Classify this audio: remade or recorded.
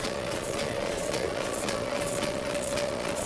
remade